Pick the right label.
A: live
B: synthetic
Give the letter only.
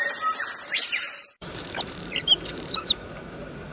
B